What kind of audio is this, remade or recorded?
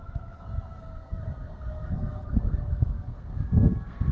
remade